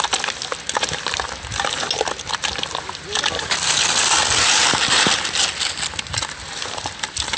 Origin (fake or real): real